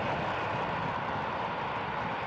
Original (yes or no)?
yes